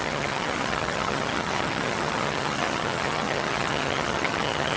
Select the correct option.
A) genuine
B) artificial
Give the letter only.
B